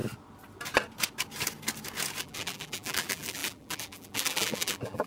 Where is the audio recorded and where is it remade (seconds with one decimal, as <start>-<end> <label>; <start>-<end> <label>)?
0.0-2.2 recorded; 2.2-5.1 remade

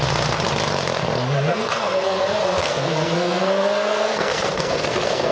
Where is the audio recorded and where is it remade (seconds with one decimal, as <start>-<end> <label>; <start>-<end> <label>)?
0.0-1.5 recorded; 1.5-2.2 remade; 2.2-2.6 recorded; 2.6-5.3 remade

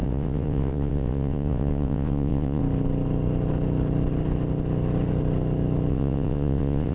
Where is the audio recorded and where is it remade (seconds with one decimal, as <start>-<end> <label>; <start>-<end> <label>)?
0.0-2.6 remade; 2.6-5.9 recorded; 5.9-6.9 remade